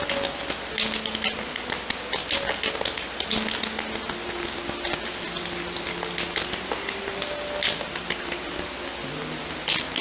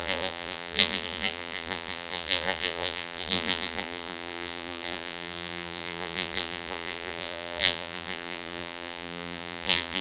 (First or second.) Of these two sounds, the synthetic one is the second